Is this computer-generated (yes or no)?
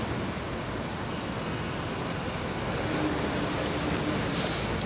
no